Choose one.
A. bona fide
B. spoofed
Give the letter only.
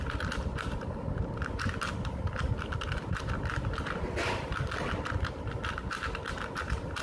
A